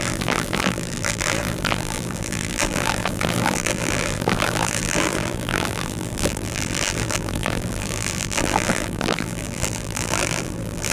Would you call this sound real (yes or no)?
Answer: no